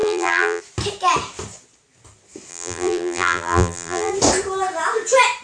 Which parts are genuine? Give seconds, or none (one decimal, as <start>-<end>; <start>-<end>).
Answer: 0.6-2.5; 4.1-5.4